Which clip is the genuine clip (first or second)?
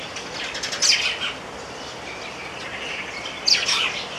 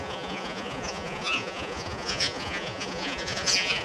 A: first